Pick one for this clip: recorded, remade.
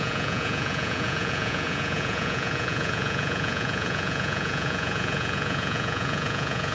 remade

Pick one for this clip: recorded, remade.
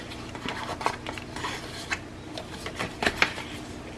recorded